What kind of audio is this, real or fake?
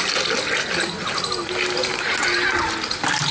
real